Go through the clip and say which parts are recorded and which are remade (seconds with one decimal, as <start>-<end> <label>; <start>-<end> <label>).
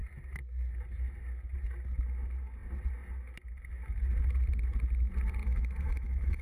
0.0-5.4 recorded; 5.4-6.4 remade